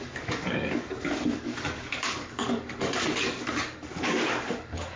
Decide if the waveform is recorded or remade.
remade